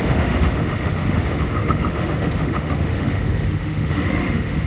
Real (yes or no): no